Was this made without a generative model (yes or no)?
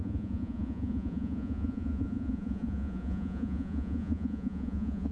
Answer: no